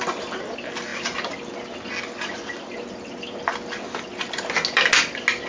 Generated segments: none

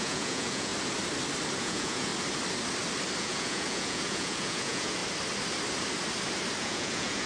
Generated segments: 0.0-0.7 (vocoder, Vocos); 1.6-2.1; 3.2-5.0; 6.6-7.3

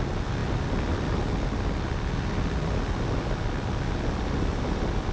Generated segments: none

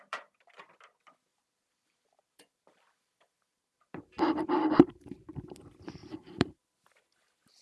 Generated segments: 0.0-0.6 (vocoder, BigVGAN v2); 1.3-5.3; 6.0-6.6